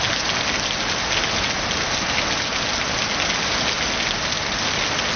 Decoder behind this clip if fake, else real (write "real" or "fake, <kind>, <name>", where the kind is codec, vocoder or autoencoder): real